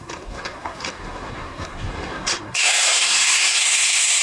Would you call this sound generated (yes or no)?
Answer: yes